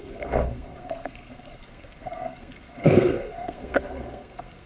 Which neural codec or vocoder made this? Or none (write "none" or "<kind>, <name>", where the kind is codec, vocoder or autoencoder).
codec, SNAC